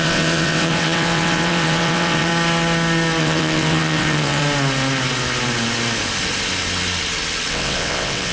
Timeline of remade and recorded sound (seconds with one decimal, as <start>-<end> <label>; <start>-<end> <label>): 0.0-2.3 remade; 2.3-3.2 recorded; 3.2-4.4 remade; 4.4-7.5 recorded; 7.5-8.3 remade